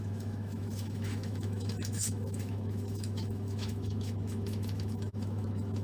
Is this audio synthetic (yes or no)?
yes